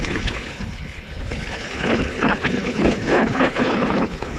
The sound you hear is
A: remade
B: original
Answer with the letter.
A